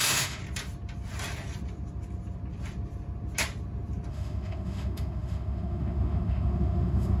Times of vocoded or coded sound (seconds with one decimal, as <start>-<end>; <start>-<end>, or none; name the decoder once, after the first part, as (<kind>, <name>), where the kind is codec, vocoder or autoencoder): 0.0-0.4 (autoencoder, DAC-VAE); 4.1-7.2